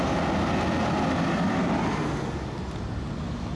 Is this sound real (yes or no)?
yes